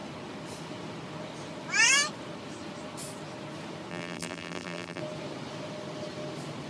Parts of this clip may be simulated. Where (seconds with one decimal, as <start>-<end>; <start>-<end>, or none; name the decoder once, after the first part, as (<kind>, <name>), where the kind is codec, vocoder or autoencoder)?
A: 3.9-5.0 (vocoder, BigVGAN v2)